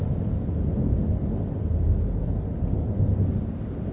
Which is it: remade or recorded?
recorded